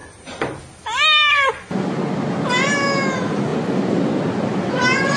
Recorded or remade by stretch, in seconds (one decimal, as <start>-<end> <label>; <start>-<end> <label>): 0.0-0.6 remade; 0.6-3.5 recorded; 3.5-4.3 remade; 4.3-5.2 recorded